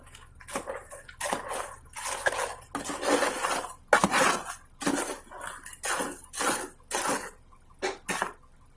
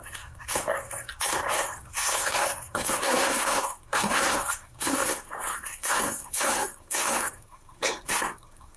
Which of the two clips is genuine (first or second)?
first